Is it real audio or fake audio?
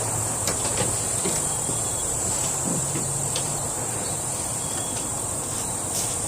fake